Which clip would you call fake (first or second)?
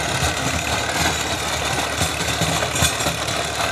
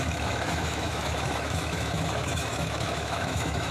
second